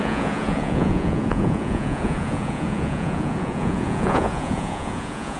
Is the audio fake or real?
fake